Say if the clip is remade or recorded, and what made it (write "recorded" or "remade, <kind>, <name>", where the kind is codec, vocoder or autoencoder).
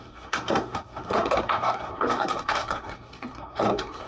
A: remade, codec, SNAC